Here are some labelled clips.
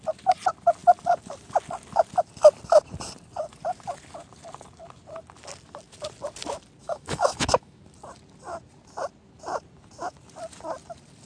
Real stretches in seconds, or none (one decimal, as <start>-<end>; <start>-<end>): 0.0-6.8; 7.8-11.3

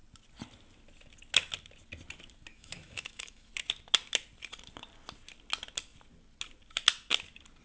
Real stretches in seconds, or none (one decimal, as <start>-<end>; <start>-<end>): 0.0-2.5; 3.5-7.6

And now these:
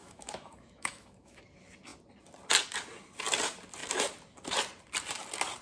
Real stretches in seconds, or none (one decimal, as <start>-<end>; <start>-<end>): 1.4-5.6

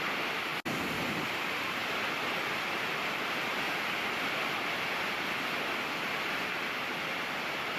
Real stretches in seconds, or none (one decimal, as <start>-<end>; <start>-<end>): 0.0-7.8

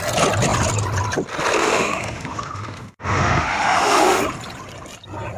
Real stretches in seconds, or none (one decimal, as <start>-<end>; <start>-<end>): 0.0-1.6; 4.2-5.4